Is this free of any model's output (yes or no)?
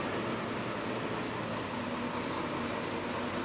yes